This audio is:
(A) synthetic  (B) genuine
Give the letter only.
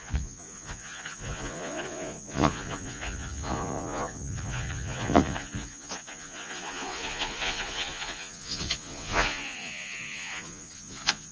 A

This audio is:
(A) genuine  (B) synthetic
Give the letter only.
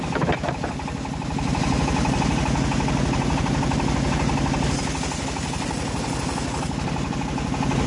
A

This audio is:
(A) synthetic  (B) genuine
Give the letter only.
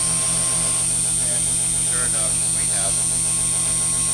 B